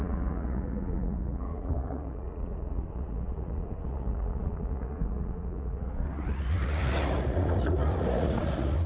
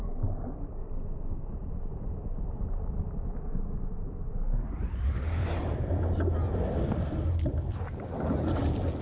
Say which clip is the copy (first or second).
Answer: first